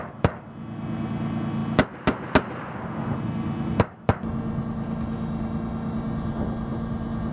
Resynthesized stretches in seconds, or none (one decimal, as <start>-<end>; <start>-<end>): none